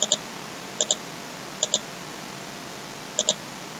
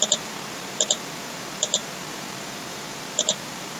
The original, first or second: first